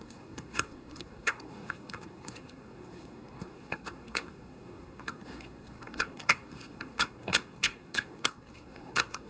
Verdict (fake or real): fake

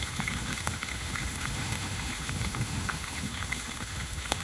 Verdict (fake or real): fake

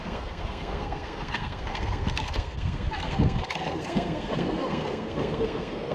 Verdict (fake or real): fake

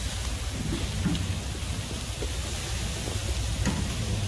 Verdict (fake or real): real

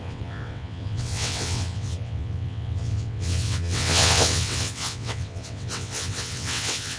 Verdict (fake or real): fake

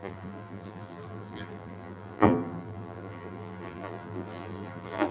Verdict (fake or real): fake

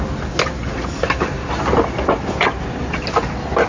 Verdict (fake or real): real